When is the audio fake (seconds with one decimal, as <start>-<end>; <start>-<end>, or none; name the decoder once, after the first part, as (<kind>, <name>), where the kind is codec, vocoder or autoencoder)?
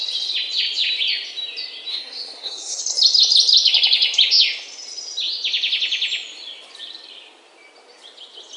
1.9-2.8 (codec, SNAC)